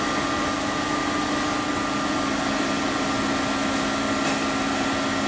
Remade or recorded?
recorded